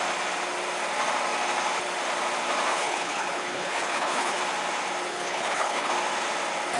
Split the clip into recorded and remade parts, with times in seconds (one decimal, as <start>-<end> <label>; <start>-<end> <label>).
0.0-2.7 recorded; 2.7-4.4 remade; 4.4-5.1 recorded; 5.1-5.9 remade; 5.9-6.8 recorded